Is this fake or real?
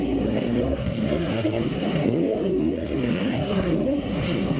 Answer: fake